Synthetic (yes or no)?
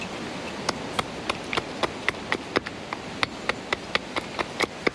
no